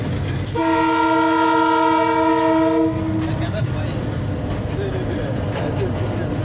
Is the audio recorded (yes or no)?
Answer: yes